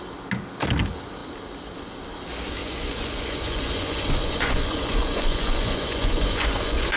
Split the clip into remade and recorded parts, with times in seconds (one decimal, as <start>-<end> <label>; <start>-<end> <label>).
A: 0.0-2.6 recorded; 2.6-7.0 remade